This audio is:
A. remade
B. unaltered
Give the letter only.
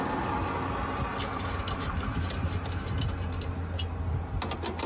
B